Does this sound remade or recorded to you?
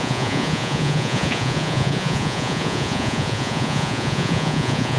remade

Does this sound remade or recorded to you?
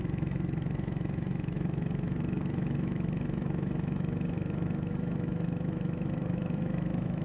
remade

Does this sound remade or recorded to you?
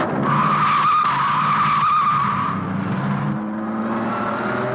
recorded